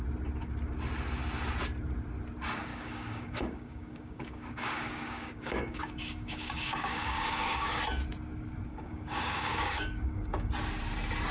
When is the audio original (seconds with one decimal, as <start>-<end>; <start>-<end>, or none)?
0.0-2.7; 7.8-8.7; 10.5-11.3